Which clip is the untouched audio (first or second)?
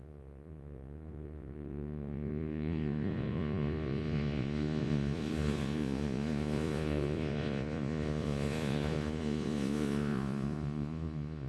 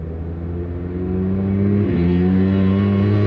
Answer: second